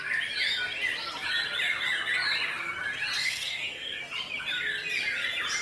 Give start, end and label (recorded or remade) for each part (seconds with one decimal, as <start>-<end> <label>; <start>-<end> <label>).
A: 0.0-3.2 recorded; 3.2-4.0 remade; 4.0-5.6 recorded